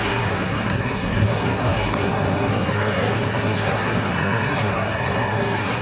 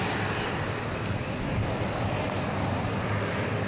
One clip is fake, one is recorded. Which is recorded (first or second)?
second